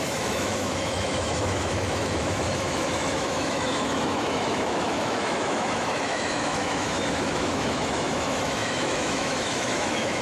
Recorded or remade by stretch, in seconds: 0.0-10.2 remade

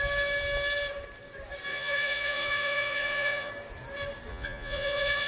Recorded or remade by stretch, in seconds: 0.0-1.7 recorded; 1.7-3.5 remade; 3.5-4.3 recorded; 4.3-5.3 remade

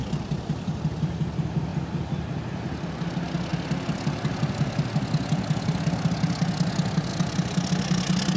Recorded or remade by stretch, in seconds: 0.0-0.8 remade; 0.8-1.7 recorded; 1.7-3.1 remade; 3.1-3.5 recorded; 3.5-4.9 remade; 4.9-8.4 recorded

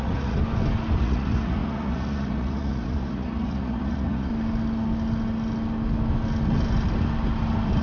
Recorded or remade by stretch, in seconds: 0.0-0.4 remade; 0.4-1.0 recorded; 1.0-4.3 remade; 4.3-7.8 recorded

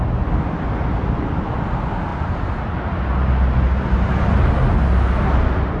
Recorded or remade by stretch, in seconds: 0.0-5.8 recorded

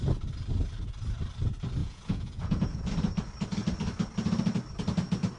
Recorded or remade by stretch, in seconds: 0.0-1.8 recorded; 1.8-2.9 remade; 2.9-5.4 recorded